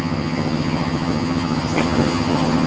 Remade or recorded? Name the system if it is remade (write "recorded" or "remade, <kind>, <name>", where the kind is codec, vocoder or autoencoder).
remade, vocoder, HiFi-GAN